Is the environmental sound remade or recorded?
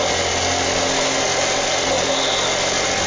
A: recorded